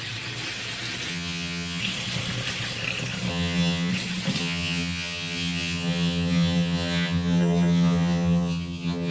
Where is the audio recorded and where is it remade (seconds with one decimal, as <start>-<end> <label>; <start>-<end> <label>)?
0.0-1.1 recorded; 1.1-1.8 remade; 1.8-3.3 recorded; 3.3-3.9 remade; 3.9-4.4 recorded; 4.4-9.1 remade